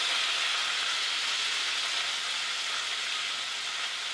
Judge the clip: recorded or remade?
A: recorded